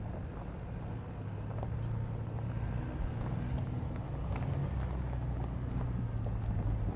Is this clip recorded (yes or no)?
yes